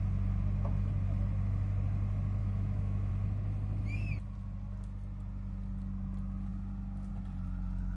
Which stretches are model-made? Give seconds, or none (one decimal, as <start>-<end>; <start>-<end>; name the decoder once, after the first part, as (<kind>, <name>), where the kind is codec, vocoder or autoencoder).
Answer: 2.4-3.1 (autoencoder, DAC-VAE)